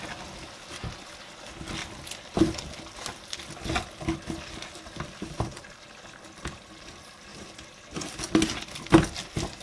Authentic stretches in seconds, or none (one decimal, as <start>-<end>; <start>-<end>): 0.0-9.6